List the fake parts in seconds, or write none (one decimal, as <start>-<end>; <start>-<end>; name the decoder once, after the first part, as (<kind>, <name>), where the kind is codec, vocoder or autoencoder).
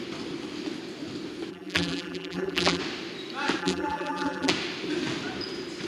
1.5-2.8 (vocoder, BigVGAN v2); 3.6-4.5